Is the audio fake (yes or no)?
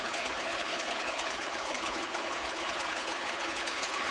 yes